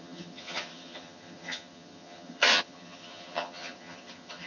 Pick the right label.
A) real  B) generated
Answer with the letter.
B